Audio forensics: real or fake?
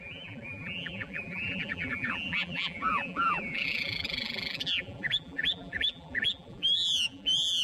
fake